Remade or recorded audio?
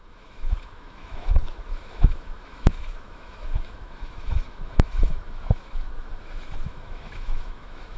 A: remade